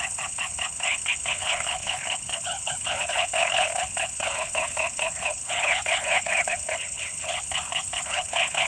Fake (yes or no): yes